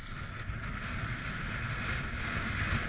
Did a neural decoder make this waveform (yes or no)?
no